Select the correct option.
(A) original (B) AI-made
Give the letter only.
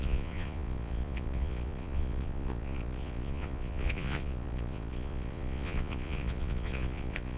B